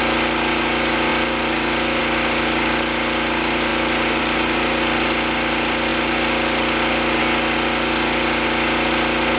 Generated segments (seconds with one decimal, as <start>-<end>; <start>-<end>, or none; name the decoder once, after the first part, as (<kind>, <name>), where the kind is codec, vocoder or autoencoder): none